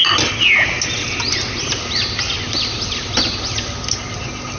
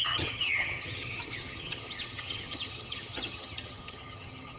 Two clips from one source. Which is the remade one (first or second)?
second